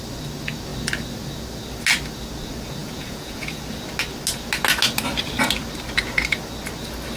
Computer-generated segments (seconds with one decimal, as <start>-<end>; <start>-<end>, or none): 2.8-3.6